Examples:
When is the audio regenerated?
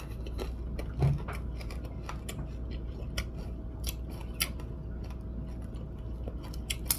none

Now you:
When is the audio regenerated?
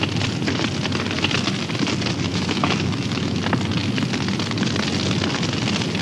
2.3-3.4 (autoencoder, DAC-VAE)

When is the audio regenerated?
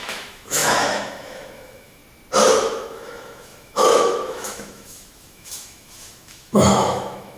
0.0-2.0 (autoencoder, DAC-VAE); 2.5-7.4